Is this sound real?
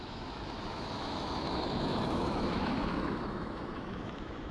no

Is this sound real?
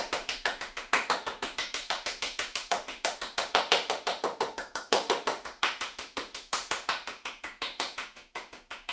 no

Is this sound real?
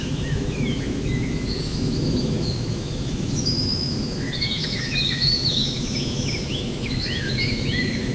no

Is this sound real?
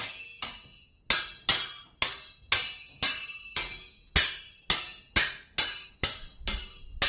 yes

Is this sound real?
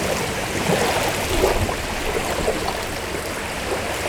yes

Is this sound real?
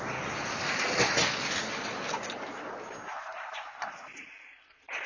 yes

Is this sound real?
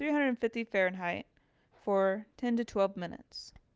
yes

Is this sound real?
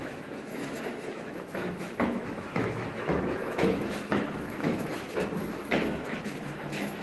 no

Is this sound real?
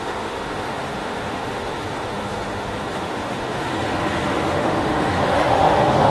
no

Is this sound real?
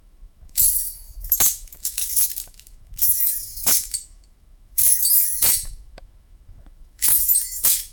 no